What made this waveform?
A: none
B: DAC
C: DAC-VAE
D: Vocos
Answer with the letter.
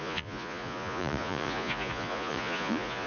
D